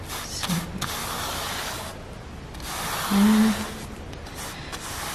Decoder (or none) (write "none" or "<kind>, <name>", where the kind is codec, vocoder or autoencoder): none